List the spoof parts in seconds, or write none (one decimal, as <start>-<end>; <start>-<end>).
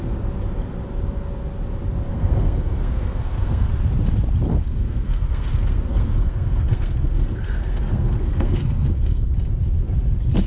2.1-3.7; 4.5-9.3